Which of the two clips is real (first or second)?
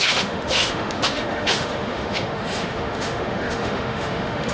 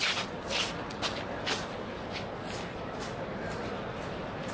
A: second